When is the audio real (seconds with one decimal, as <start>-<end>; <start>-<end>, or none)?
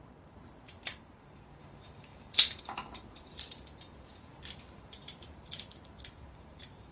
0.9-1.6; 4.3-4.8